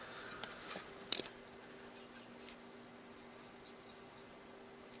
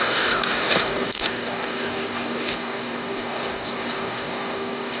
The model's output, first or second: second